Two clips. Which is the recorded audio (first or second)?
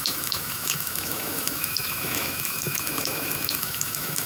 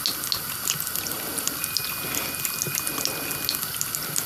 second